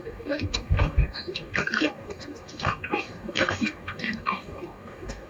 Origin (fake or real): fake